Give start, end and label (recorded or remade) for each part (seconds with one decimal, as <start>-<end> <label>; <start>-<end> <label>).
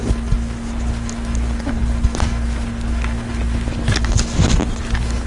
0.0-5.3 recorded